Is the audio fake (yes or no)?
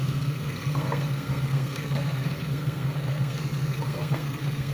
yes